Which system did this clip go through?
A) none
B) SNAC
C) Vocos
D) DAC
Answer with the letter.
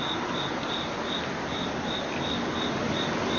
A